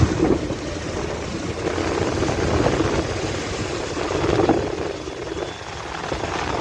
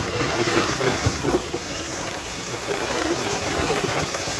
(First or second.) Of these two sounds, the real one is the first